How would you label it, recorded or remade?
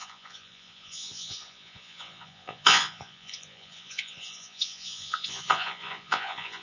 remade